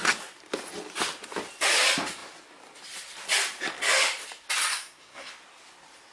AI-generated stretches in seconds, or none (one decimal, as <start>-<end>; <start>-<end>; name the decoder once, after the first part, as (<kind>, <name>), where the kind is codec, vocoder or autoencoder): 4.7-5.3 (codec, SNAC)